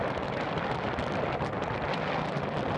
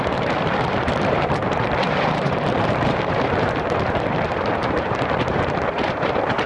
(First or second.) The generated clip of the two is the second